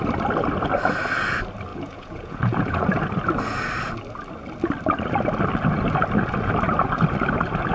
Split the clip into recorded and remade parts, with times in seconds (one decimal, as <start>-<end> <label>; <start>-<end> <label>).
0.0-1.7 recorded; 1.7-3.0 remade; 3.0-7.7 recorded